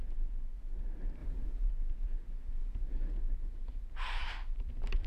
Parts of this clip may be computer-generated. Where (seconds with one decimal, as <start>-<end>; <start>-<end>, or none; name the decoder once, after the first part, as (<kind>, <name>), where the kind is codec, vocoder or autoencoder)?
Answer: 1.2-1.7 (vocoder, Vocos); 2.6-3.2